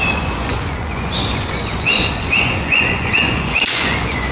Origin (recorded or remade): remade